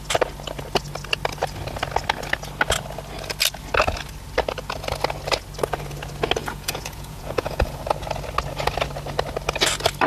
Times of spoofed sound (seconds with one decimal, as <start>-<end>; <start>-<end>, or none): 6.4-7.8